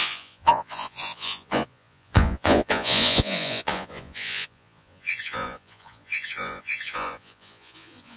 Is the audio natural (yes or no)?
no